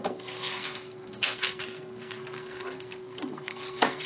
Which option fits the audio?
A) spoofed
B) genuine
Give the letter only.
A